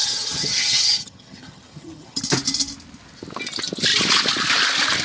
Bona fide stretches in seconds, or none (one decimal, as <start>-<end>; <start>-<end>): 2.2-5.0

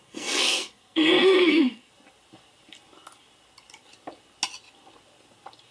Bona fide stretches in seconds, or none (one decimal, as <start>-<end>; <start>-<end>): 1.9-5.7